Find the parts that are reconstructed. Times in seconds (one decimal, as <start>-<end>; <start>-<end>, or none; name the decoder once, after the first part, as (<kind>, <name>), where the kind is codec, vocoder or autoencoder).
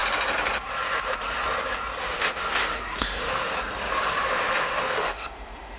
2.0-3.5 (autoencoder, DAC-VAE); 4.1-5.8